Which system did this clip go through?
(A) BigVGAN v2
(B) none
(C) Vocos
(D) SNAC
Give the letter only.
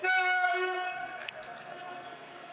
D